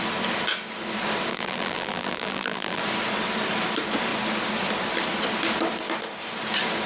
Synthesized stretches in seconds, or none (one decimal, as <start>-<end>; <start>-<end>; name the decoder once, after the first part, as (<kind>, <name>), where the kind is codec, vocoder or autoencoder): 1.3-2.8 (vocoder, BigVGAN v2)